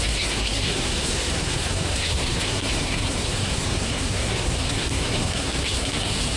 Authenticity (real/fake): fake